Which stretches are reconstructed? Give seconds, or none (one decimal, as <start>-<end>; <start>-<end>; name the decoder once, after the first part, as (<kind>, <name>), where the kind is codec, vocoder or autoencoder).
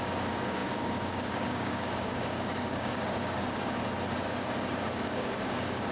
0.0-3.8 (codec, DAC); 4.8-5.9